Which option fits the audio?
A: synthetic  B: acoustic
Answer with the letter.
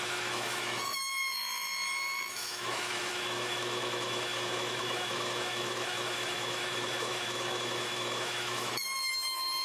A